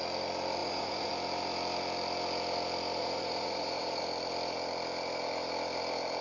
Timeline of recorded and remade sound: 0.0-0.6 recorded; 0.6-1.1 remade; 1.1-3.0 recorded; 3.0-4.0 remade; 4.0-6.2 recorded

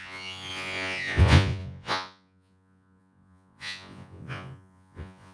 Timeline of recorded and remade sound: 0.0-5.3 remade

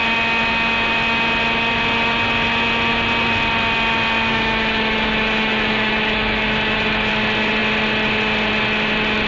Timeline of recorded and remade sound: 0.0-4.3 recorded; 4.3-7.1 remade; 7.1-9.3 recorded

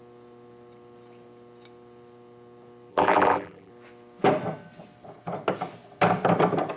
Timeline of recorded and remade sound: 0.0-2.9 recorded; 2.9-3.7 remade; 3.7-6.8 recorded

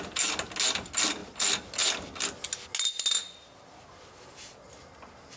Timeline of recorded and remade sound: 0.0-5.4 recorded